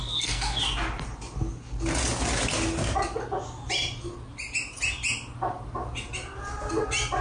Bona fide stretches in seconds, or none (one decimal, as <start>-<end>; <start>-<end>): 0.6-7.2